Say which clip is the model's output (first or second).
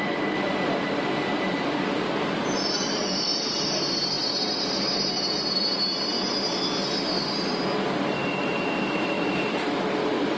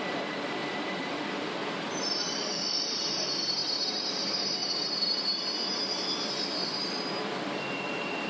second